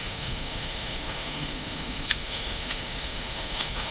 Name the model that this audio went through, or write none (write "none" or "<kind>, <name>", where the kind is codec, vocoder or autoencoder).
autoencoder, DAC-VAE